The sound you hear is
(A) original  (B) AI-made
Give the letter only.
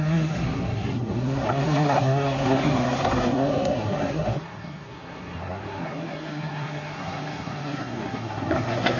B